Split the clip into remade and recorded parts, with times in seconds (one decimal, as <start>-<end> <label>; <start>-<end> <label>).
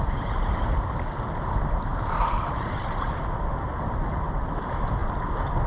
0.0-1.9 recorded; 1.9-3.2 remade; 3.2-5.7 recorded